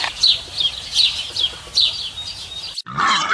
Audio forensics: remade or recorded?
recorded